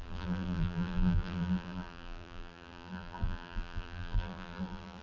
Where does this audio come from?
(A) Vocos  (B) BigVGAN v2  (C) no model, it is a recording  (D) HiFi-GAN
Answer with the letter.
B